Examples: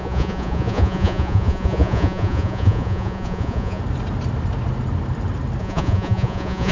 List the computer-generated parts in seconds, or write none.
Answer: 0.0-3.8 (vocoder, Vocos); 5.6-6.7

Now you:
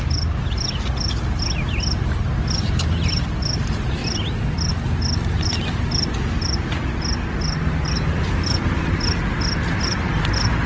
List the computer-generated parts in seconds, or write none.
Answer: none

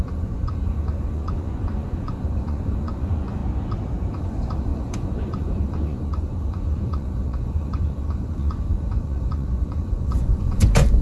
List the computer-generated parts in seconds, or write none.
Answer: 0.0-3.4 (vocoder, Vocos); 4.2-11.0

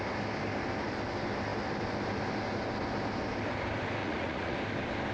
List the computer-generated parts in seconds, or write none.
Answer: 4.0-4.6 (vocoder, Vocos)

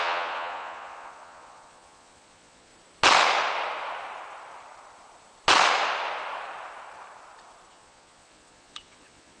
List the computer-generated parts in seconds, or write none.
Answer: 0.0-2.7 (vocoder, Vocos); 7.7-9.4

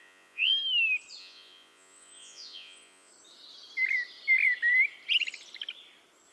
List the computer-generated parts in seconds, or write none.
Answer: 0.0-0.5 (vocoder, Vocos); 1.2-3.1

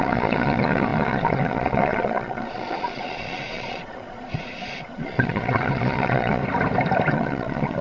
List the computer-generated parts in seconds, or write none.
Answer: 0.0-6.4 (vocoder, Vocos); 7.1-7.8